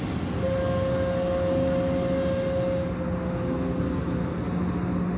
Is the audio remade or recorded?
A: recorded